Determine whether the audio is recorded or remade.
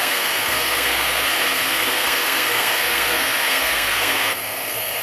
remade